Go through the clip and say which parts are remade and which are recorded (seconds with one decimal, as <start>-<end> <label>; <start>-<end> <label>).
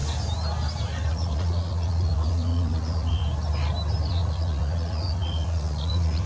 0.0-1.1 recorded; 1.1-3.2 remade; 3.2-4.1 recorded; 4.1-6.3 remade